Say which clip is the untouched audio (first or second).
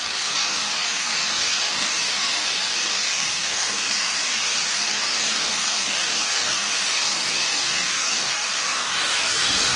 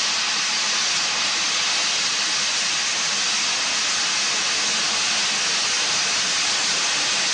second